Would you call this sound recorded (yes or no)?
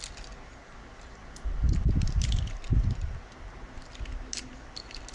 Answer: yes